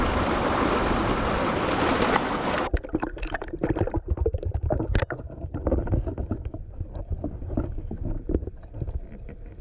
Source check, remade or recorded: recorded